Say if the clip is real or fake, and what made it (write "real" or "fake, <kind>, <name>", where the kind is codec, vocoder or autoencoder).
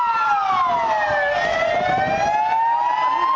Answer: real